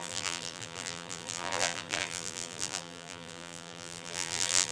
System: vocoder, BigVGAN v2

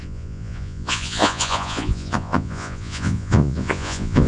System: vocoder, Vocos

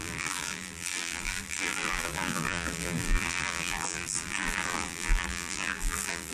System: vocoder, BigVGAN v2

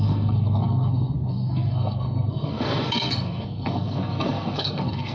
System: codec, SNAC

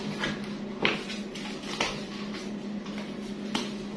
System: none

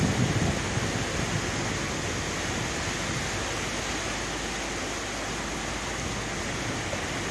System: none